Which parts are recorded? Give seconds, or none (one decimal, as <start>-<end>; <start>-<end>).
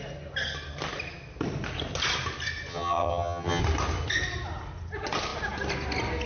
0.0-2.7; 3.6-6.3